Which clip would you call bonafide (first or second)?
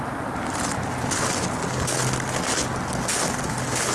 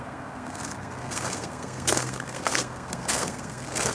first